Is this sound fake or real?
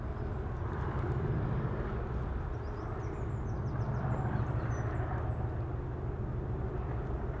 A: real